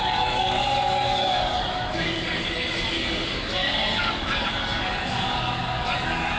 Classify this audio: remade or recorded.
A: remade